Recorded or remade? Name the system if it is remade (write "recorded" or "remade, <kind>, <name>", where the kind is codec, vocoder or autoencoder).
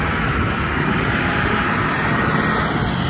recorded